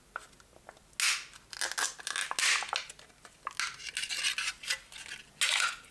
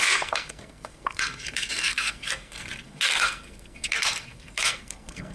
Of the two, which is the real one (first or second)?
first